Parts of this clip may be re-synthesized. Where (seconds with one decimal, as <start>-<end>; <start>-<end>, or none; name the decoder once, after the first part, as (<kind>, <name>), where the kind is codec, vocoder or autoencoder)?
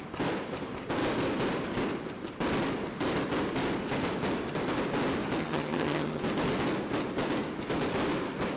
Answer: 5.4-6.2 (vocoder, HiFi-GAN)